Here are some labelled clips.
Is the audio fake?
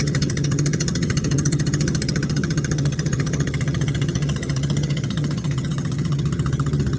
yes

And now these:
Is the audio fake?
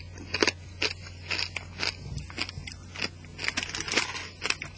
no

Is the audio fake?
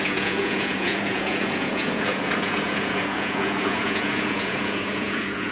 yes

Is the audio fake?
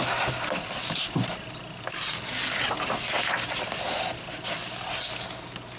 no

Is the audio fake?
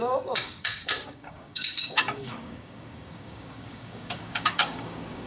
yes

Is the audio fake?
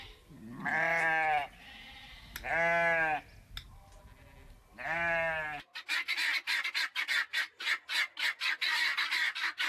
no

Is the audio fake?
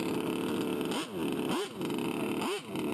yes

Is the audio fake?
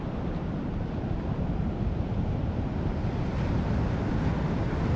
no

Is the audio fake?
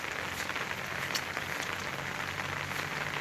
no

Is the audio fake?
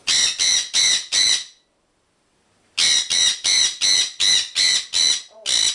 no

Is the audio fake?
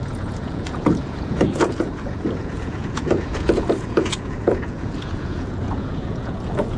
yes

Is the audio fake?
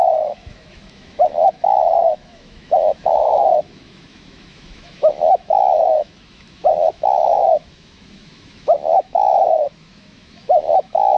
yes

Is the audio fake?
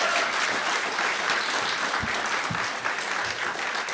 no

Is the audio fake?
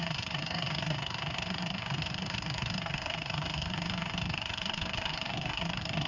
yes